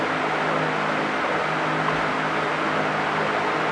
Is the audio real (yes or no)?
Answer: yes